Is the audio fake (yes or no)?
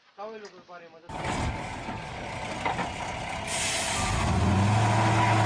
no